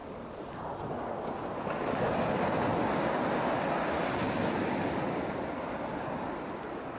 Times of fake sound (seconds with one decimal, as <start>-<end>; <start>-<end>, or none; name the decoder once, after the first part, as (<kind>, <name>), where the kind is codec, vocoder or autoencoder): none